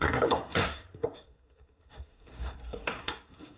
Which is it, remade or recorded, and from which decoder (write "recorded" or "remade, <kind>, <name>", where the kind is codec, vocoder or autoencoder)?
remade, codec, SNAC